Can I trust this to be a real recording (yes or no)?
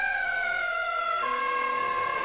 no